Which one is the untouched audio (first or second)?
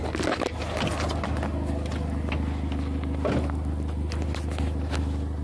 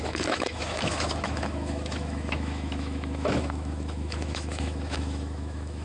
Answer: first